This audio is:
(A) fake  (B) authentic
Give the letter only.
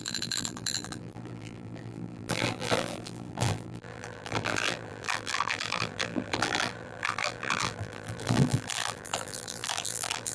A